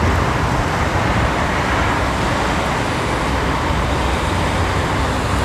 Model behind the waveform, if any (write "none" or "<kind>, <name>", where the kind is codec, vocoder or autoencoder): none